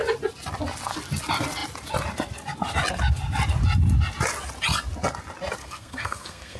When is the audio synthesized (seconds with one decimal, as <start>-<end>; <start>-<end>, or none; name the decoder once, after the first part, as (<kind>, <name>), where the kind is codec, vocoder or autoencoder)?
5.6-6.6 (codec, SNAC)

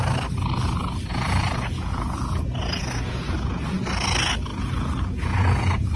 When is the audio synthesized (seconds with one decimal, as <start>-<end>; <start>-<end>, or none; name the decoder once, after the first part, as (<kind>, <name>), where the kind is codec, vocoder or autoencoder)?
1.1-3.7 (vocoder, Vocos); 4.5-6.0

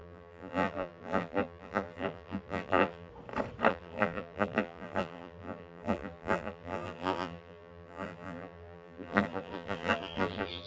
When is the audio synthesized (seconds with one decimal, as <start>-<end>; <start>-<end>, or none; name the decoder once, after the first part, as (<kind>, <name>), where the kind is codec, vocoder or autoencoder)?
0.0-3.1 (vocoder, BigVGAN v2); 3.7-10.7

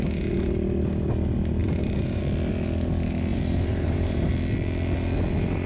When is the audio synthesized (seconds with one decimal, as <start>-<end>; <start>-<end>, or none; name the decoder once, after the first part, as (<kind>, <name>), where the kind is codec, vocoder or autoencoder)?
1.6-2.2 (vocoder, BigVGAN v2); 3.3-4.3